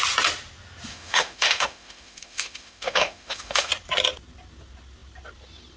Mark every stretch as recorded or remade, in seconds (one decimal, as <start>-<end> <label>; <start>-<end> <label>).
0.0-0.9 recorded; 0.9-3.7 remade; 3.7-5.8 recorded